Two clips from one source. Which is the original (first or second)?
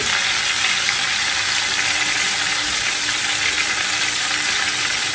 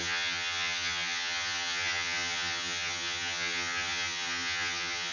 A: first